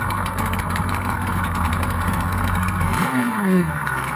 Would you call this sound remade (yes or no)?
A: yes